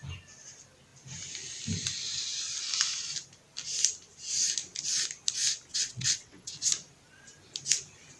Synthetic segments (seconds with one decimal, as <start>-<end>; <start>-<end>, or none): 5.7-6.5